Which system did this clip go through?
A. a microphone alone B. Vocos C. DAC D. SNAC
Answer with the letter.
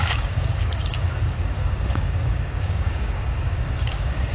C